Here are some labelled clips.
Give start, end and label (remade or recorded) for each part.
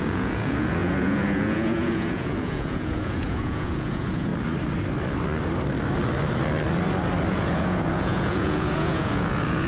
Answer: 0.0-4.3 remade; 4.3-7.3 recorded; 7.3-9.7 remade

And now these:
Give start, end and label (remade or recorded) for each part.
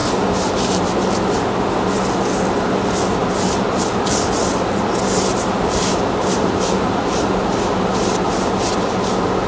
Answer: 0.0-5.3 recorded; 5.3-7.5 remade; 7.5-9.5 recorded